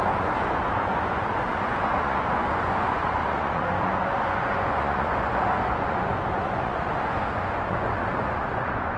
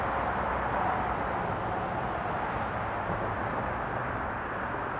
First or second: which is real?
second